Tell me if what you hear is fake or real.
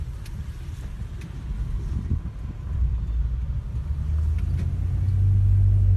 real